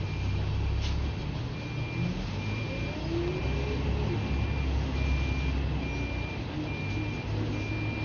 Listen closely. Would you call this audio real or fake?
real